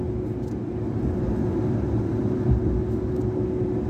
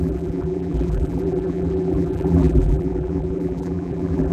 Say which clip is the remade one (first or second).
second